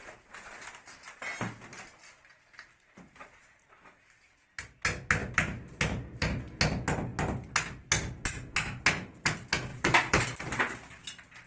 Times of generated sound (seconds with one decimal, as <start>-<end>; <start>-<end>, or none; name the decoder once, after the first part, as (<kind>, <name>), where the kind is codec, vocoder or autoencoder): 0.0-3.7 (vocoder, BigVGAN v2); 5.2-6.3; 9.7-10.2

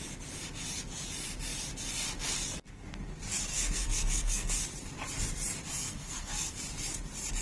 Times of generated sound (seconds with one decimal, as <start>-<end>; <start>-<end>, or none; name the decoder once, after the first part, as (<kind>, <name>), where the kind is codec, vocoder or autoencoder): 3.5-4.5 (codec, SNAC); 5.8-6.6

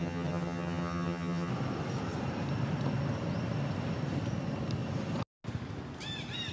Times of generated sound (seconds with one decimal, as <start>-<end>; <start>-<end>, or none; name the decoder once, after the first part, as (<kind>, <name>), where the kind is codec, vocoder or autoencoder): 0.0-1.5 (vocoder, HiFi-GAN)

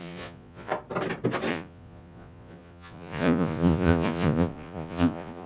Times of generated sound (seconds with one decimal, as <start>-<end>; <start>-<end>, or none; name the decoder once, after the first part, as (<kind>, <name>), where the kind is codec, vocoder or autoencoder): 0.0-0.7 (vocoder, Vocos); 1.5-5.5